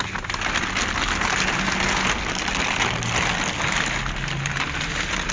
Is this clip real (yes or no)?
yes